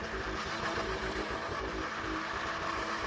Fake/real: real